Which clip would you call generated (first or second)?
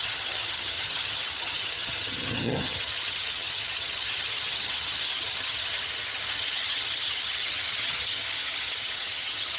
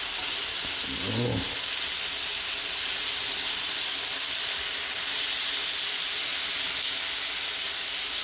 first